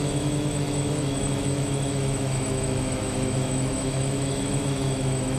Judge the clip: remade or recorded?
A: remade